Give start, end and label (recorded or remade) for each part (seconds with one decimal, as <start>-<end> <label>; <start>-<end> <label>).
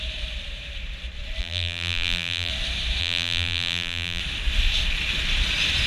0.0-1.4 recorded; 1.4-2.5 remade; 2.5-3.0 recorded; 3.0-4.2 remade; 4.2-5.9 recorded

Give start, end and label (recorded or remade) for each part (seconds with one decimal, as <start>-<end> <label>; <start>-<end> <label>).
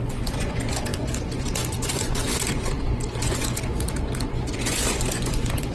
0.0-5.7 remade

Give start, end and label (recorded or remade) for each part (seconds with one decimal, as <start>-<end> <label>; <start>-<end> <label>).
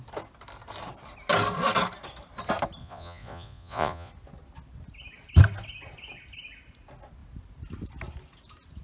0.0-2.8 recorded; 2.8-4.1 remade; 4.1-8.8 recorded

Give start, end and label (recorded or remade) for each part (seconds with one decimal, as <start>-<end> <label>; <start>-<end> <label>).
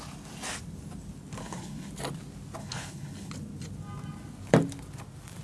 0.0-1.4 recorded; 1.4-1.9 remade; 1.9-2.6 recorded; 2.6-3.3 remade; 3.3-5.4 recorded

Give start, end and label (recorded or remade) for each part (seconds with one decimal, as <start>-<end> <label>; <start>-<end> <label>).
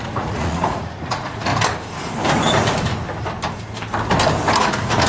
0.0-1.5 remade; 1.5-4.6 recorded; 4.6-5.1 remade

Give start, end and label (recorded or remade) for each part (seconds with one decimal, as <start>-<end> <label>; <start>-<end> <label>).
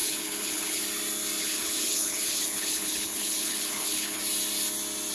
0.0-0.8 remade; 0.8-1.4 recorded; 1.4-4.2 remade; 4.2-5.1 recorded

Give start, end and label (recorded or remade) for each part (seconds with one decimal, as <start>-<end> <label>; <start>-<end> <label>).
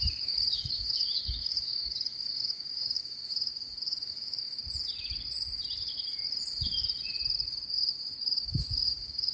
0.0-4.6 remade; 4.6-8.2 recorded; 8.2-9.3 remade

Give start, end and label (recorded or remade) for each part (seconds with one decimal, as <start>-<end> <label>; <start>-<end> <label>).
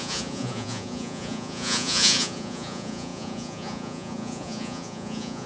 0.0-5.5 remade